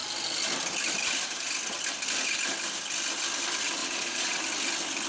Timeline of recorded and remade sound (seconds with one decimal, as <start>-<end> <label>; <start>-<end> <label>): 0.0-3.8 recorded; 3.8-4.4 remade; 4.4-5.1 recorded